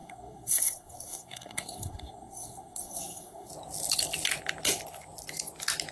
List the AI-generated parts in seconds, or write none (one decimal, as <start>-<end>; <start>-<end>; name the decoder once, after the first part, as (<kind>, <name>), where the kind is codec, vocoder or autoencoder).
0.0-3.5 (codec, SNAC)